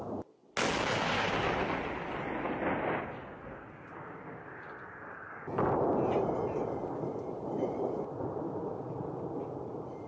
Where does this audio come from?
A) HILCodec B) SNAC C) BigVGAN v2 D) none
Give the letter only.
D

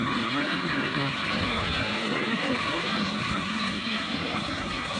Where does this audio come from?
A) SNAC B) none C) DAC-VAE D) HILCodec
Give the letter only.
A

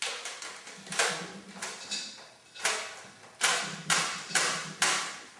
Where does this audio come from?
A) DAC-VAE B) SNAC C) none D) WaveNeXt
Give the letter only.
C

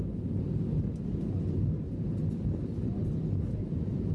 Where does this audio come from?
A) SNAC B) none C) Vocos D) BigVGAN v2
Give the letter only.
B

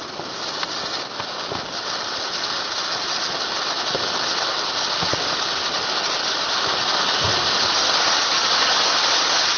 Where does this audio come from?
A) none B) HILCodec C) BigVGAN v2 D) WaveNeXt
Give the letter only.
A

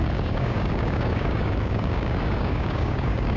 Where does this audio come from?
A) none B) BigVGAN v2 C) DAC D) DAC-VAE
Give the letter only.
C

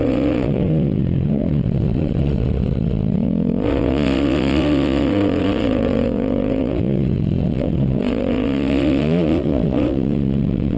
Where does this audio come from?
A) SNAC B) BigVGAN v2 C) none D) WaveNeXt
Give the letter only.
D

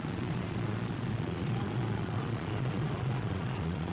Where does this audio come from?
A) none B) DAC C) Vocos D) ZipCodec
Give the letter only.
C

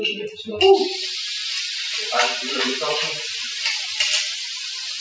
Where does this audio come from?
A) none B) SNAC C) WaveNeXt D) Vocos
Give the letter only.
A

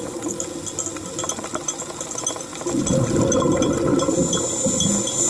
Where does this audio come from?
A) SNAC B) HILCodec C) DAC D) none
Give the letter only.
D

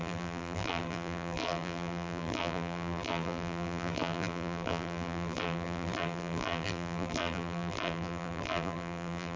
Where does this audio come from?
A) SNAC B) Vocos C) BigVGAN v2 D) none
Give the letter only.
C